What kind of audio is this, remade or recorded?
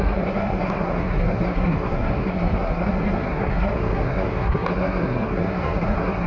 remade